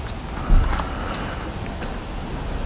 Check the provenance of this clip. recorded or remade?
recorded